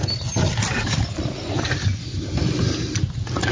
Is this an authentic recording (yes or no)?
yes